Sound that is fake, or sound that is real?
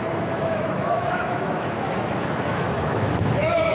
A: fake